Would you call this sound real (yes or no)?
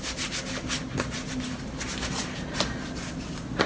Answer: yes